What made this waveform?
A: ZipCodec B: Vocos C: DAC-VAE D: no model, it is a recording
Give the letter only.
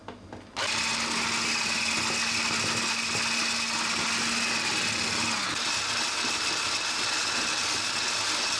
D